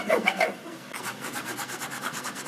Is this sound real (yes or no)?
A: no